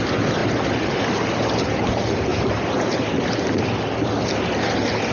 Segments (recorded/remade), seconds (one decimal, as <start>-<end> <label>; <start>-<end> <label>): 0.0-5.1 recorded